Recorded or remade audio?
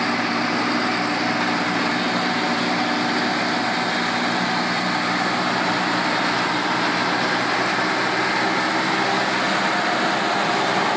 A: recorded